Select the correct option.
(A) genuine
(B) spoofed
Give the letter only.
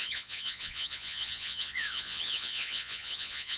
B